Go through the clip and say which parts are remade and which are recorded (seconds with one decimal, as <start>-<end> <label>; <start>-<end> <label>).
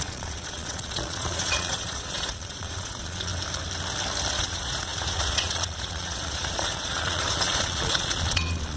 0.0-3.3 remade; 3.3-4.3 recorded; 4.3-8.8 remade